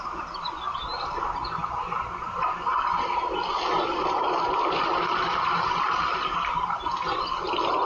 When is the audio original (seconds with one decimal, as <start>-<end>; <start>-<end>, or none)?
0.0-7.9